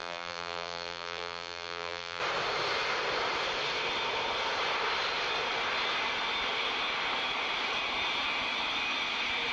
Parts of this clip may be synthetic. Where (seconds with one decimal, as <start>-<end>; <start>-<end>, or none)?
0.0-2.2